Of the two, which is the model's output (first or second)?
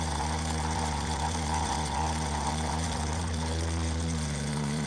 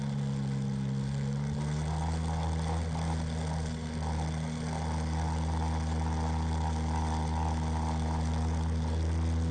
first